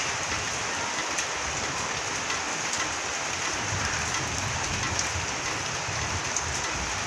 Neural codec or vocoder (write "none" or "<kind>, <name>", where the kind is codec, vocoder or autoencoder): none